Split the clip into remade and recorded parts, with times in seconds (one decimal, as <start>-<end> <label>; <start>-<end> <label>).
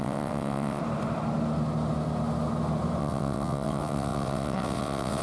0.0-0.8 remade; 0.8-3.0 recorded; 3.0-5.2 remade